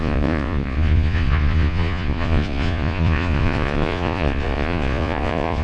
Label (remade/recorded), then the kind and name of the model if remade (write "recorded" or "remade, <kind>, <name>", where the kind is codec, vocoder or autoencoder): remade, vocoder, Vocos